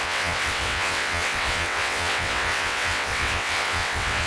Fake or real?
fake